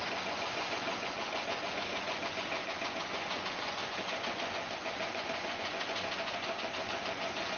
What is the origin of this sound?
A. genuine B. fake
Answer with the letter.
B